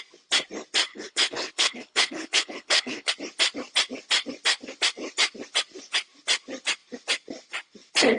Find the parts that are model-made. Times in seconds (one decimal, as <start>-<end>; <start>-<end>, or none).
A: 0.9-3.1